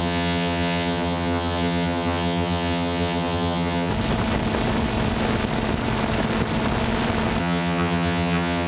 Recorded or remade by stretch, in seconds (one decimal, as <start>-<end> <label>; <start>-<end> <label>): 0.0-3.9 remade; 3.9-7.4 recorded; 7.4-8.7 remade